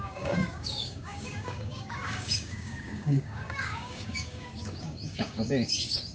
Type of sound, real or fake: fake